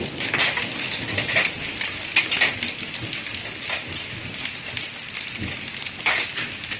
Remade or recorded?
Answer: recorded